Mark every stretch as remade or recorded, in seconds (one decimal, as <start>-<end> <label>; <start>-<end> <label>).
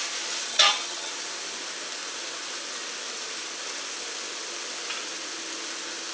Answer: 0.0-0.5 recorded; 0.5-1.1 remade; 1.1-6.1 recorded